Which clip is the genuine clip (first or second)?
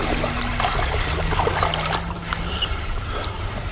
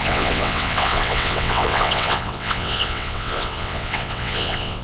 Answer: first